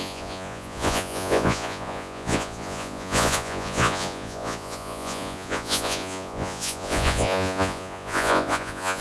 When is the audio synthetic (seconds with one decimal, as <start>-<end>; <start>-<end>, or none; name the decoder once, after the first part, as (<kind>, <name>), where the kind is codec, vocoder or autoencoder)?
0.0-9.0 (vocoder, Vocos)